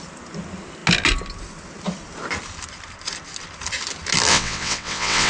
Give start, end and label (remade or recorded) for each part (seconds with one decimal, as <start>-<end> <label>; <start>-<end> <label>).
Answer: 0.0-4.3 recorded; 4.3-5.3 remade